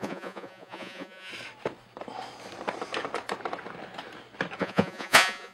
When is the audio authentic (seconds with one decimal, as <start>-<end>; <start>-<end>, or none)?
1.3-4.6

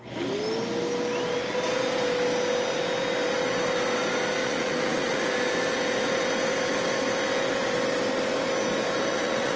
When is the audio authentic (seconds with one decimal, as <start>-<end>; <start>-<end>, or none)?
0.0-4.4; 5.2-9.1

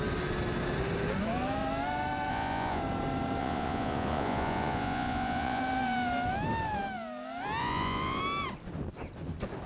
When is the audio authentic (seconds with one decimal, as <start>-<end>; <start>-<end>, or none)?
0.0-2.3; 2.8-3.4; 5.6-7.6; 8.2-9.7

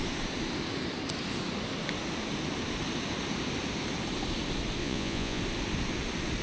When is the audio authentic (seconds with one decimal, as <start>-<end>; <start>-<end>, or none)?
0.0-4.8; 5.4-6.4

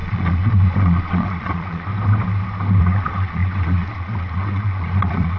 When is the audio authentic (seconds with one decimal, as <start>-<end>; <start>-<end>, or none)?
1.9-2.8

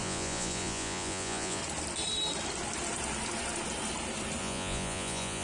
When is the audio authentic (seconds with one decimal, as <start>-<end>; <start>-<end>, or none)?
1.6-4.4

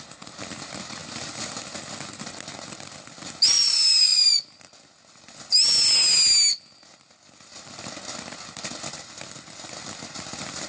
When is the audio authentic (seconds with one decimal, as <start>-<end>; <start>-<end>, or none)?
0.0-10.7

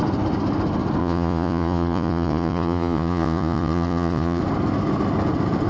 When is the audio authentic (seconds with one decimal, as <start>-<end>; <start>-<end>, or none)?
0.0-1.0; 4.4-5.7